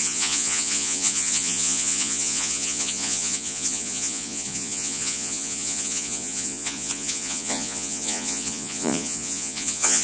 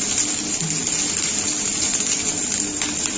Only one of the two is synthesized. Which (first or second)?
first